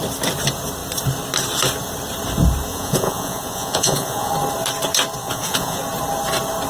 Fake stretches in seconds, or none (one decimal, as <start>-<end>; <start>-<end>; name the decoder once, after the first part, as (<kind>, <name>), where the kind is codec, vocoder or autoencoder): 2.7-4.3 (vocoder, Vocos); 5.2-5.8